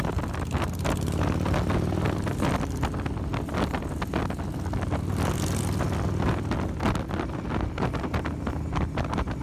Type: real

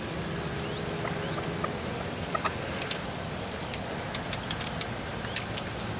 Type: real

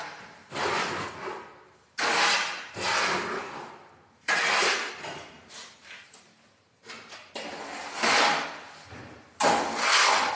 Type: real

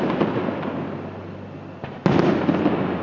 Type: real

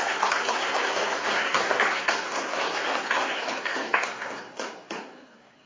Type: fake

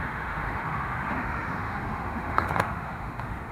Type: fake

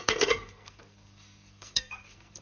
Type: fake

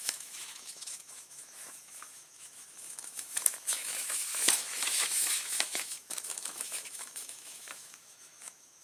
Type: fake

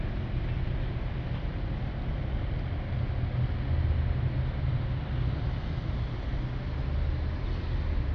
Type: real